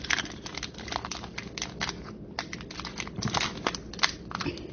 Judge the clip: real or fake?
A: real